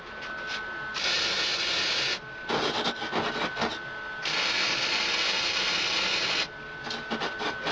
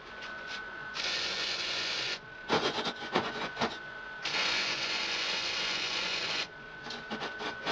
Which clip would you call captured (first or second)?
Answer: first